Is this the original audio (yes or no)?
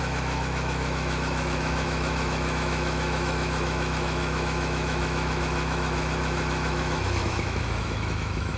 no